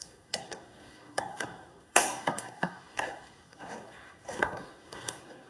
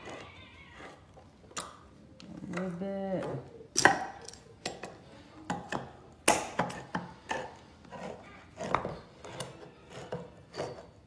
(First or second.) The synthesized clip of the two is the first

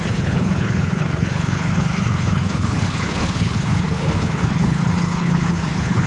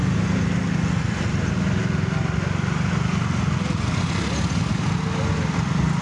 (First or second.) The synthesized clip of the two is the first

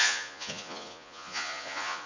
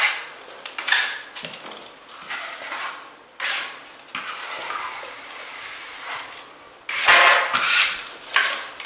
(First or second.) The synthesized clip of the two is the first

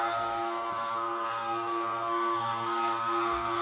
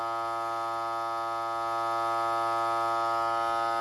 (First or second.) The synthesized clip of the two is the first